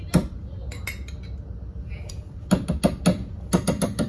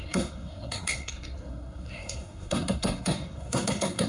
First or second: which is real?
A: first